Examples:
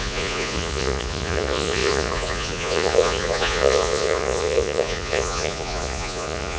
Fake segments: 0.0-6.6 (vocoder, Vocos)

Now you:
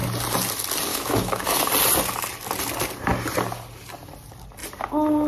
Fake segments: 0.9-1.6 (autoencoder, DAC-VAE)

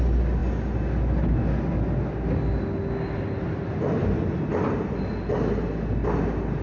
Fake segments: none